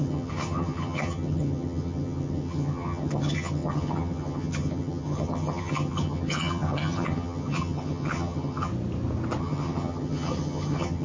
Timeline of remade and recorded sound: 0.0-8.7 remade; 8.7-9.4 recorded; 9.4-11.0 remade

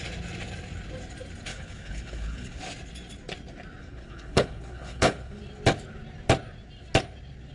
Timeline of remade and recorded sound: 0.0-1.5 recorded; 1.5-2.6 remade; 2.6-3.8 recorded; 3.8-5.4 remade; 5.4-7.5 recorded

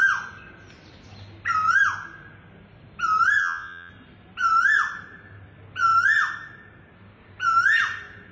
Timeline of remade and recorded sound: 0.0-3.4 recorded; 3.4-3.9 remade; 3.9-8.3 recorded

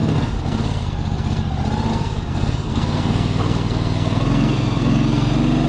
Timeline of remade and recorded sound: 0.0-1.4 remade; 1.4-1.9 recorded; 1.9-5.3 remade; 5.3-5.7 recorded

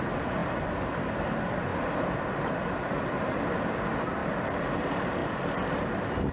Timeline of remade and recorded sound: 0.0-1.7 recorded; 1.7-3.6 remade; 3.6-4.2 recorded; 4.2-4.8 remade; 4.8-6.3 recorded

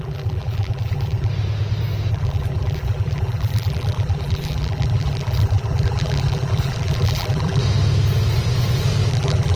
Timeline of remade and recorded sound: 0.0-1.3 remade; 1.3-2.1 recorded; 2.1-7.6 remade; 7.6-9.1 recorded; 9.1-9.6 remade